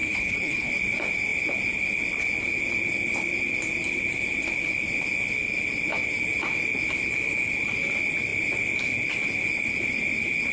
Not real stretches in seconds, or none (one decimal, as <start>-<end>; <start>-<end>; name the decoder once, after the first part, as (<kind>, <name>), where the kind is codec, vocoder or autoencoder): 0.0-0.7 (codec, HILCodec)